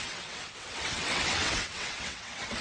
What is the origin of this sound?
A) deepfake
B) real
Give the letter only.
A